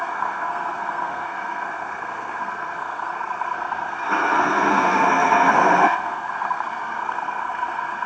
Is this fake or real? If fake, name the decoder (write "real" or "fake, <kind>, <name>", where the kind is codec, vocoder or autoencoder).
fake, codec, SNAC